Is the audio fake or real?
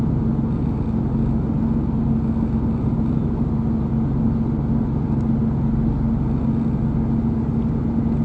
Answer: real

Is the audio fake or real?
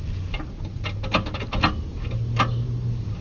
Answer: real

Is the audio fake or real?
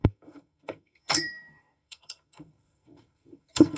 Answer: fake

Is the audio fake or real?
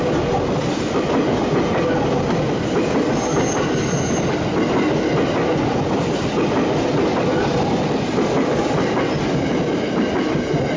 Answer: real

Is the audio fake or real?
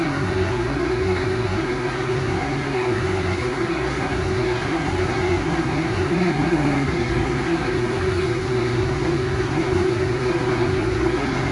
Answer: fake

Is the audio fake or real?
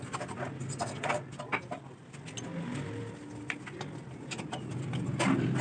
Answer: real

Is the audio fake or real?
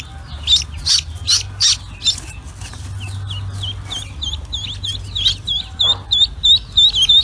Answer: real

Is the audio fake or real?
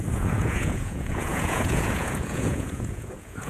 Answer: fake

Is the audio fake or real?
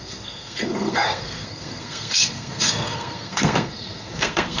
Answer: fake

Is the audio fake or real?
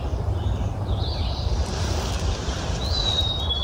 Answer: real